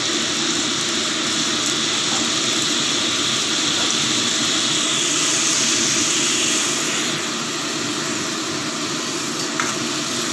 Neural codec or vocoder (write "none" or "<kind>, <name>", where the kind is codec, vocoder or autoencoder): none